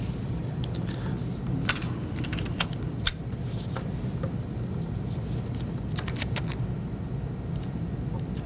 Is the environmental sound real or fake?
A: real